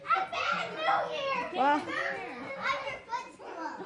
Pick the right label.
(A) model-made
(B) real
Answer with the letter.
B